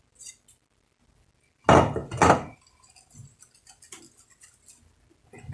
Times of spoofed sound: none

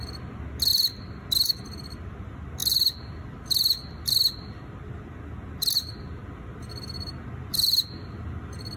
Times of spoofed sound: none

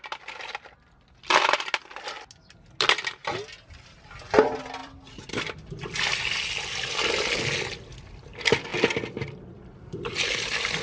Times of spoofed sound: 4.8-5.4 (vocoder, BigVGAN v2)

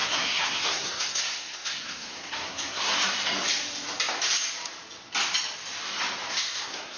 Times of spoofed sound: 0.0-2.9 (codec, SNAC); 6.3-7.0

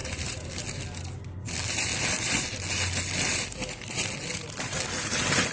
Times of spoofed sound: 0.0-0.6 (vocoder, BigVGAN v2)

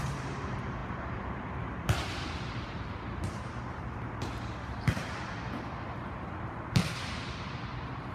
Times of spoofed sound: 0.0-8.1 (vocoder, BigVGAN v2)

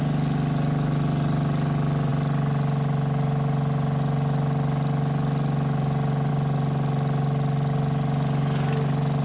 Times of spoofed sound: none

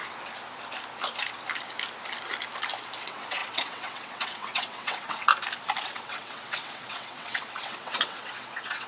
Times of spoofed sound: 3.0-5.3 (vocoder, WaveNeXt); 5.8-8.9